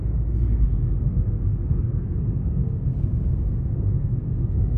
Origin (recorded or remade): remade